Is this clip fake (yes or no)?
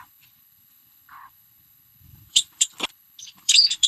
yes